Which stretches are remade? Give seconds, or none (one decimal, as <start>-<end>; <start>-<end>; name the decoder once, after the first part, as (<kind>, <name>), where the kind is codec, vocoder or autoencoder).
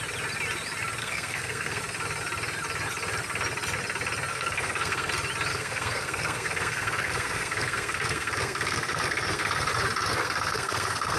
1.0-1.8 (codec, SNAC); 4.3-5.1; 5.5-9.7; 10.1-11.2